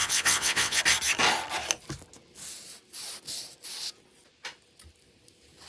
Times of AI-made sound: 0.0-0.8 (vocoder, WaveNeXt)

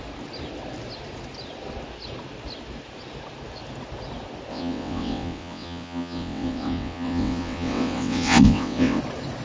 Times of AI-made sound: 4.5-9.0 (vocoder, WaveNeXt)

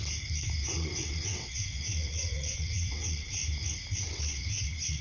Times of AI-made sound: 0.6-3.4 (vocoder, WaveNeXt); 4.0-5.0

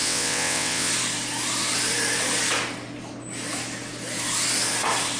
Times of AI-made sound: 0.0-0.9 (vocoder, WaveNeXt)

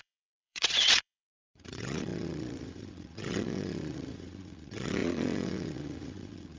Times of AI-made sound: 0.0-6.6 (vocoder, WaveNeXt)